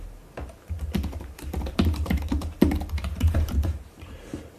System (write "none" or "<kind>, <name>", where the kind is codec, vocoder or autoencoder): vocoder, BigVGAN v2